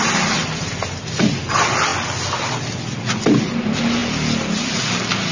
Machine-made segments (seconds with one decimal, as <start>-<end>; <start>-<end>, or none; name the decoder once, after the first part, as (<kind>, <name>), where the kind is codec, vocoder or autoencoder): none